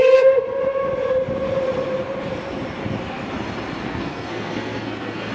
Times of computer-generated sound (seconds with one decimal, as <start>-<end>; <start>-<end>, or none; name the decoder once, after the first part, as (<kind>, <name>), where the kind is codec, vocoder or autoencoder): 3.8-5.3 (codec, SNAC)